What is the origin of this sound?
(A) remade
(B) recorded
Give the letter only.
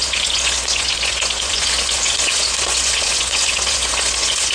A